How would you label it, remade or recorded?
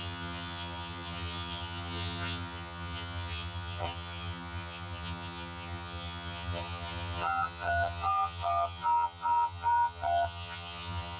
remade